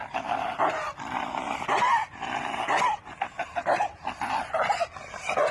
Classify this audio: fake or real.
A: real